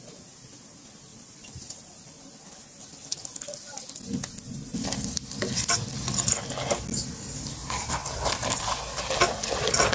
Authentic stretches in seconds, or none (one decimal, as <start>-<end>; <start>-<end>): 0.0-1.1; 2.2-8.0; 8.6-9.9